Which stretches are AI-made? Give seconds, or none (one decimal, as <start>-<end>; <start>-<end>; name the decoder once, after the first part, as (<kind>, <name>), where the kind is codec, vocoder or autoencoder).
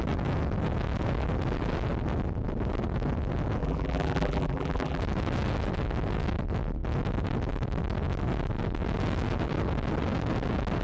3.6-5.0 (vocoder, BigVGAN v2)